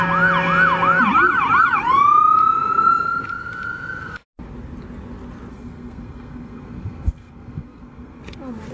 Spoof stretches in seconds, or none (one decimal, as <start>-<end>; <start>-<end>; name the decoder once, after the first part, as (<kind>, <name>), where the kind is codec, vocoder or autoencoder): 5.5-8.2 (codec, SNAC)